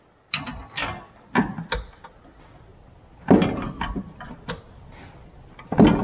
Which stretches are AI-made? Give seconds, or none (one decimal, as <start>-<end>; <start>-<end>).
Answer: none